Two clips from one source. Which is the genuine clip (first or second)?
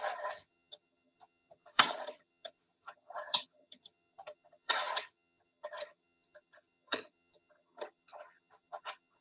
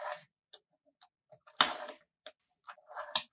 second